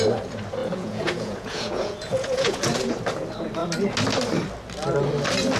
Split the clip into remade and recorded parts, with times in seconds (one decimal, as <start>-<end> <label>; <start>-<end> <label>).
0.0-0.6 recorded; 0.6-2.6 remade; 2.6-5.6 recorded